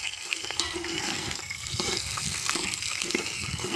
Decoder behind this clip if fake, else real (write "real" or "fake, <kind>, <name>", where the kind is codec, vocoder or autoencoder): fake, codec, SNAC